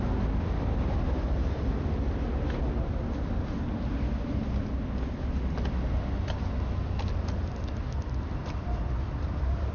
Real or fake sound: real